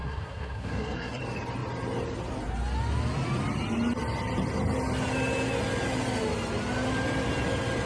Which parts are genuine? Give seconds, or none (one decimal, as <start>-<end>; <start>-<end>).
1.2-7.9